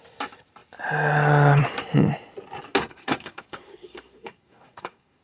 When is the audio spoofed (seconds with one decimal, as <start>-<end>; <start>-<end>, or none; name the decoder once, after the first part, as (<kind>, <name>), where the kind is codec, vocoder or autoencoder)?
2.8-5.2 (codec, SNAC)